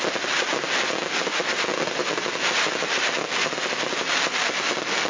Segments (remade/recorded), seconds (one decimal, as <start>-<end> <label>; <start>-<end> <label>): 0.0-5.1 recorded